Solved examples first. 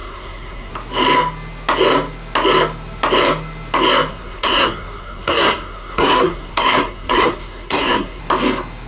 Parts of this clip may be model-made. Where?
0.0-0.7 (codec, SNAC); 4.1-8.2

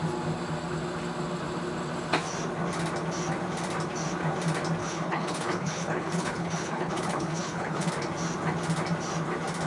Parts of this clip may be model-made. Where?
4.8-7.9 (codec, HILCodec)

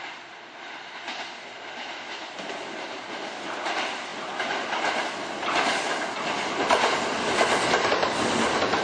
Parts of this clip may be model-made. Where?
none

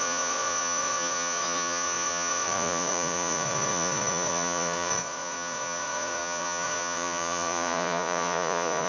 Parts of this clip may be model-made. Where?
0.0-8.9 (vocoder, Vocos)

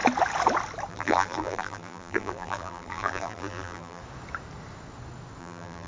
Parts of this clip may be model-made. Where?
0.9-4.0 (vocoder, BigVGAN v2); 5.4-5.9

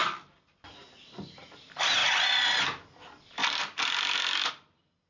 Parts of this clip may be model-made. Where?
none

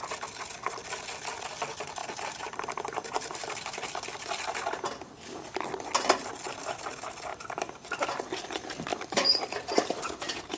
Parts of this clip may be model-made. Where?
2.0-3.9 (vocoder, BigVGAN v2); 7.3-8.1; 8.9-10.6

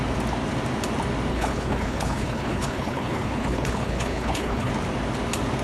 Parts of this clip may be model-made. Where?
1.3-4.7 (codec, HILCodec)